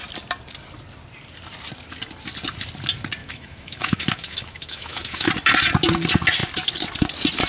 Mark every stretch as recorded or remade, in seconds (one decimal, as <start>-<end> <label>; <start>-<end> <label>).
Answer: 0.0-3.2 recorded; 3.2-5.3 remade; 5.3-7.5 recorded